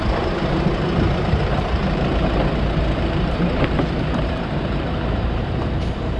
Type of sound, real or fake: fake